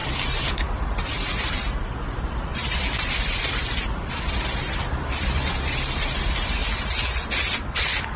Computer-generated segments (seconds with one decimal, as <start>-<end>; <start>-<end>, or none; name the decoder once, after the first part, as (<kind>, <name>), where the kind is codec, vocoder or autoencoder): 0.0-6.6 (vocoder, BigVGAN v2); 7.3-8.2